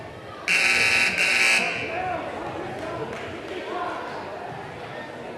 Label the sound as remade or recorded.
recorded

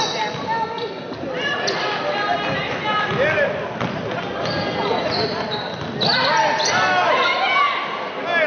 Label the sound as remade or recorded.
recorded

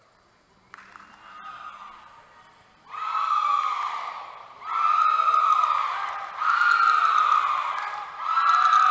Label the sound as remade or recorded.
recorded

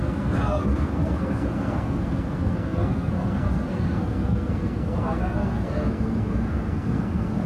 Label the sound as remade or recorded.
remade